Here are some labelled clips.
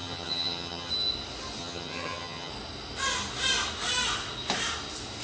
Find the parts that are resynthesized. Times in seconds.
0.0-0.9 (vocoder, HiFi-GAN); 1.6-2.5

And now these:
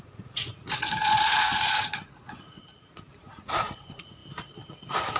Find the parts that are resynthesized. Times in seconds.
0.0-2.6 (vocoder, Vocos); 3.1-4.2